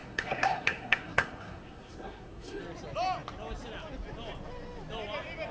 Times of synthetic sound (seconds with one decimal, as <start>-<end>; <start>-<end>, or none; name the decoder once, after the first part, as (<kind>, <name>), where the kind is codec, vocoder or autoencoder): 0.0-2.6 (codec, SNAC)